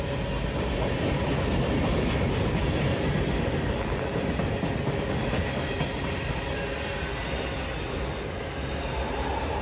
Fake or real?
real